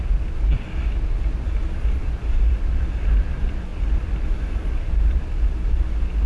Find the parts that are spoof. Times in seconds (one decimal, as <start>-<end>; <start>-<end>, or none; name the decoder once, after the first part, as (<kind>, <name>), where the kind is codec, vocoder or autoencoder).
none